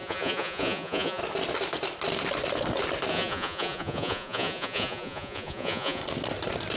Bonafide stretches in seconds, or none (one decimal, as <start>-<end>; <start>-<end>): 1.2-3.1; 6.0-6.8

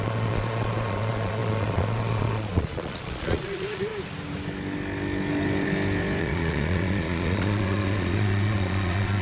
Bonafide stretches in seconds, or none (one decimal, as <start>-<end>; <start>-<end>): 3.9-6.2

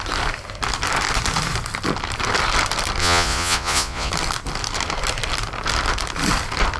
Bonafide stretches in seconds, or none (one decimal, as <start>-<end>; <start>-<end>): 0.0-3.0; 4.1-6.8

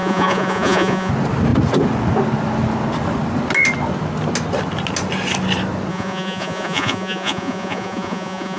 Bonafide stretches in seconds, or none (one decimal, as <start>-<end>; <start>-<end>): 1.1-5.9

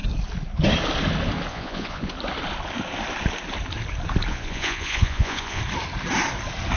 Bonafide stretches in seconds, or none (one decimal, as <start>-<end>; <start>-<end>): 0.0-1.5; 2.1-4.3; 5.6-6.8